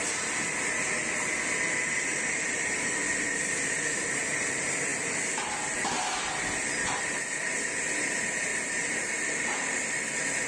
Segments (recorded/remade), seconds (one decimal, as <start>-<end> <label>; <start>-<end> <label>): 0.0-10.5 recorded